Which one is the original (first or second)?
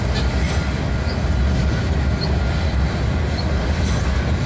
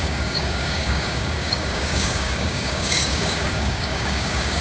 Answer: first